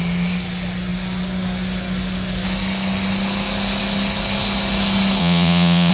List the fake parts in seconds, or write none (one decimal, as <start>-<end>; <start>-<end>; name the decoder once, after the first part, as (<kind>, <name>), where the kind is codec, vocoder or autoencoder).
5.2-5.9 (vocoder, Vocos)